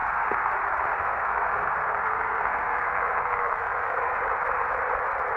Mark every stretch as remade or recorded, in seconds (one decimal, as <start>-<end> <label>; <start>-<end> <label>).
0.0-0.5 remade; 0.5-0.9 recorded; 0.9-4.1 remade; 4.1-5.4 recorded